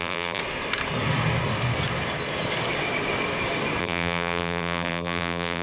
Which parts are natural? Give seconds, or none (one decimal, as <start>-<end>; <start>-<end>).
0.4-3.8